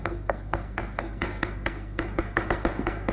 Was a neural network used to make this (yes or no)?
yes